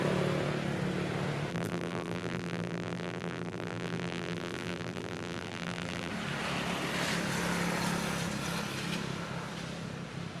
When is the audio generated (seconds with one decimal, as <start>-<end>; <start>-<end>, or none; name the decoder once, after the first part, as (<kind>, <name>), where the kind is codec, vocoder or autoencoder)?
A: 1.5-6.1 (vocoder, BigVGAN v2)